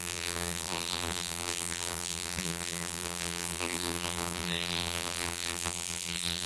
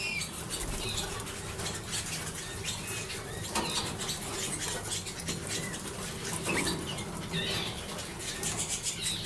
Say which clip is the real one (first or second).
second